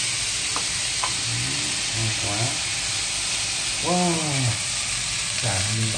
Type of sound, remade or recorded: recorded